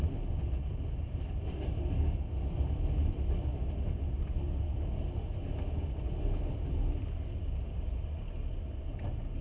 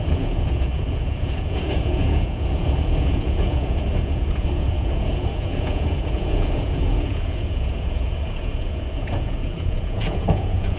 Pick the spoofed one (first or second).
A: second